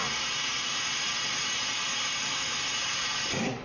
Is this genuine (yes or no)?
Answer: yes